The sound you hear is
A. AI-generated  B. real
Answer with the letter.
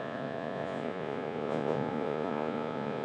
A